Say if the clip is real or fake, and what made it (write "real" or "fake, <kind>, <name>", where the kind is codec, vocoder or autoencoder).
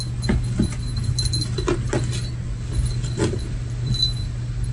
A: real